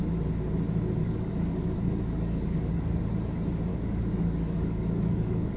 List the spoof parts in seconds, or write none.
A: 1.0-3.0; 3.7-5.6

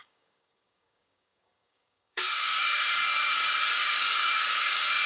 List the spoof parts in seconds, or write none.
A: 0.0-5.1

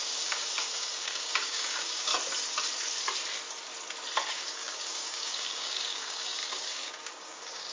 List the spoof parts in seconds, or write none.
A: 0.0-2.1; 4.3-7.7

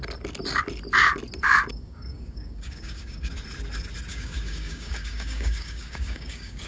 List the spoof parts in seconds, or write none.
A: 1.7-3.3; 4.1-6.7